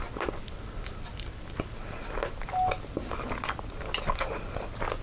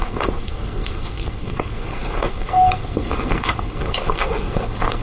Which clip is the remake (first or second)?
second